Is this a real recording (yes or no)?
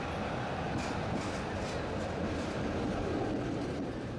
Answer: yes